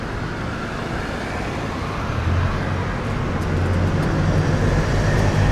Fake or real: real